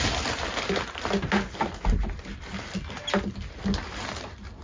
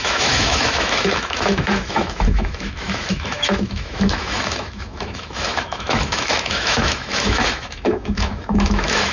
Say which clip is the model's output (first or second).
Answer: second